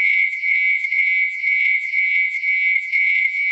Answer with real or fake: fake